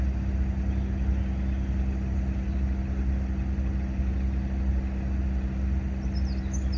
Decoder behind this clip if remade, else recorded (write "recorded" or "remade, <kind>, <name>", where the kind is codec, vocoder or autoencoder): recorded